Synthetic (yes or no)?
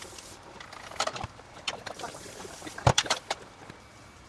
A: yes